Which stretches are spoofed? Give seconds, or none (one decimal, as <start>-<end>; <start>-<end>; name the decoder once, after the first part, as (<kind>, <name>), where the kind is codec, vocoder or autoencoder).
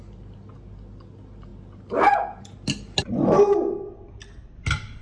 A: none